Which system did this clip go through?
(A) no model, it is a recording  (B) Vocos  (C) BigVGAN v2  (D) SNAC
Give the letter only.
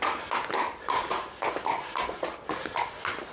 A